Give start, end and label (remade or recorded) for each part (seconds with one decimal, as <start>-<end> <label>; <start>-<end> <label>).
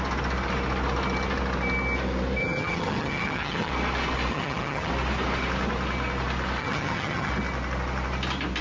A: 0.0-2.4 recorded; 2.4-3.7 remade; 3.7-4.3 recorded; 4.3-4.9 remade; 4.9-6.6 recorded; 6.6-7.3 remade; 7.3-8.6 recorded